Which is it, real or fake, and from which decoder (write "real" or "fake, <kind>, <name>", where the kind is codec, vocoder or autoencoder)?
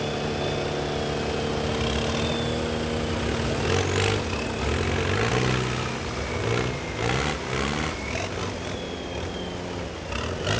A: real